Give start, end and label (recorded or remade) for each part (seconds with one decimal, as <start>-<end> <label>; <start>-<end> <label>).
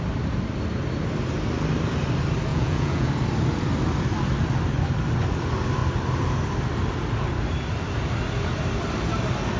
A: 0.0-2.5 recorded; 2.5-3.1 remade; 3.1-9.6 recorded